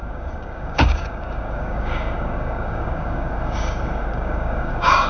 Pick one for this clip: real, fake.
fake